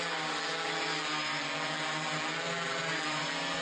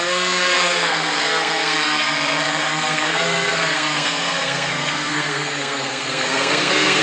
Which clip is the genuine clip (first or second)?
first